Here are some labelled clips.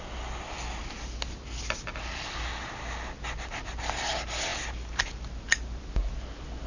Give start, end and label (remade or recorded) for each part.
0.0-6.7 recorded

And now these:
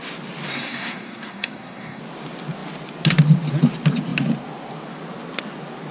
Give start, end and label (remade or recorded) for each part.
0.0-0.5 recorded; 0.5-2.0 remade; 2.0-5.9 recorded

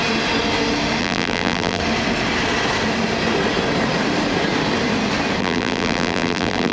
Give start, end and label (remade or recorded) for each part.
0.0-1.0 recorded; 1.0-1.8 remade; 1.8-5.4 recorded; 5.4-6.7 remade